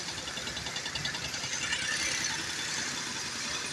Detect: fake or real real